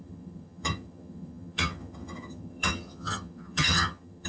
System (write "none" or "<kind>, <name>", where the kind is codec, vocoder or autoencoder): vocoder, HiFi-GAN